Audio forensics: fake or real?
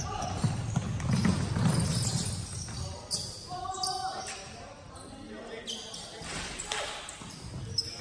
real